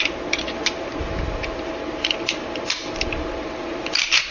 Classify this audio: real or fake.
fake